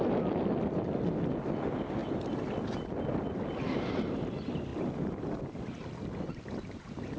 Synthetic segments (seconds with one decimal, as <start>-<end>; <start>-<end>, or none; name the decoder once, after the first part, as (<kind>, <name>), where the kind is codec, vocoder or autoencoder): none